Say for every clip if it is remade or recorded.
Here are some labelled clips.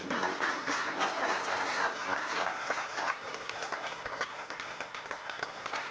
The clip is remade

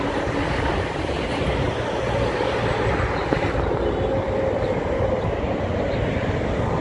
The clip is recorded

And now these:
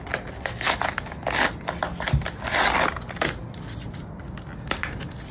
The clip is recorded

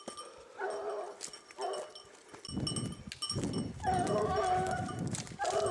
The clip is recorded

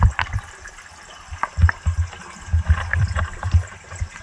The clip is recorded